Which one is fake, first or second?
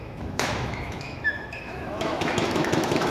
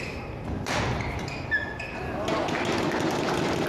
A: first